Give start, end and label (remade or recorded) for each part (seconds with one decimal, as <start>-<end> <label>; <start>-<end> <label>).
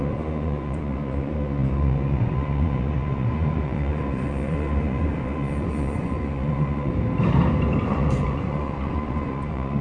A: 0.0-6.9 remade; 6.9-7.9 recorded; 7.9-9.8 remade